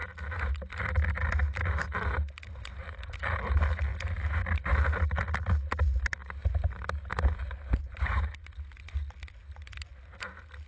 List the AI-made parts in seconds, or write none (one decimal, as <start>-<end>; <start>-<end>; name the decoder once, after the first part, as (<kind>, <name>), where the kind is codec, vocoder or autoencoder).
9.9-10.7 (vocoder, BigVGAN v2)